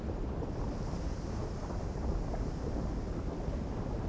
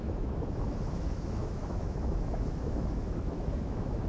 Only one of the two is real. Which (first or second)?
first